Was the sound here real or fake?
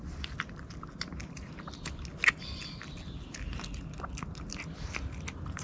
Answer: real